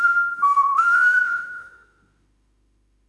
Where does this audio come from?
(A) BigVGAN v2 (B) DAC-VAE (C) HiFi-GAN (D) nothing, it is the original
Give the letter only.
B